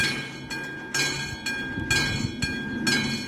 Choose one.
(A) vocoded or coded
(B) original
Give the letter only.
B